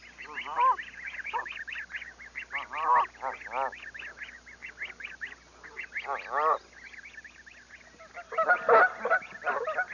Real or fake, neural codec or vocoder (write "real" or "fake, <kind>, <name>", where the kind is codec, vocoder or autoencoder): real